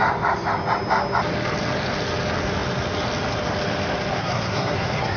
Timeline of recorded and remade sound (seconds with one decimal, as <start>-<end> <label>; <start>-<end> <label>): 0.0-4.2 recorded; 4.2-5.2 remade